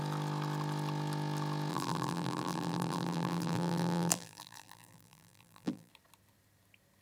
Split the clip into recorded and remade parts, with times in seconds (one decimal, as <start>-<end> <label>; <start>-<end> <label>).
0.0-1.7 recorded; 1.7-5.9 remade; 5.9-7.0 recorded